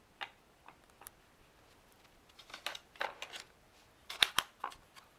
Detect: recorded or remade recorded